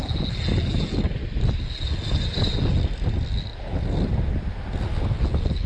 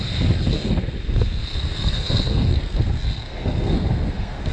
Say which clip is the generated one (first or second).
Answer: second